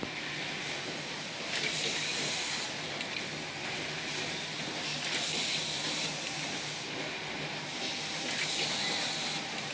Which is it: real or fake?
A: real